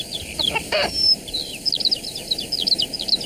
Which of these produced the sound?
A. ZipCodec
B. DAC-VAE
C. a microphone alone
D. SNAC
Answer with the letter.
C